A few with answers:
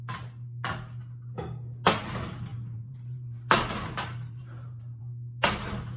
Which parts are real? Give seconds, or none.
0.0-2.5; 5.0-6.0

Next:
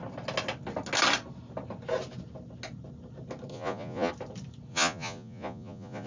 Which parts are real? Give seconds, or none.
0.0-3.5; 4.1-4.7

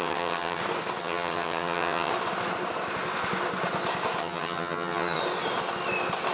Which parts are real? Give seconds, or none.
0.6-1.0; 2.1-4.2; 5.2-6.3

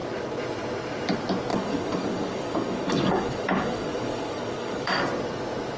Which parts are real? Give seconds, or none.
0.0-1.5; 5.0-5.8

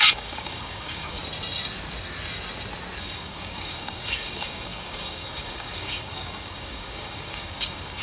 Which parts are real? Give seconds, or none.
1.2-3.0